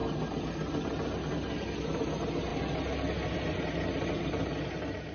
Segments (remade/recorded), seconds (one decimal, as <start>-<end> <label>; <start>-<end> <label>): 0.0-5.1 recorded